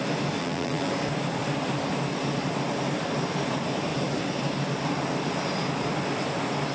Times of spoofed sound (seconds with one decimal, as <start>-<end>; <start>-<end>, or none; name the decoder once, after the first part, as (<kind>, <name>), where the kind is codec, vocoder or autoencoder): 0.4-0.9 (vocoder, BigVGAN v2)